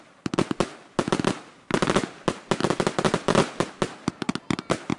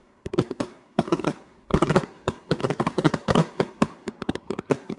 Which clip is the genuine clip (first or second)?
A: first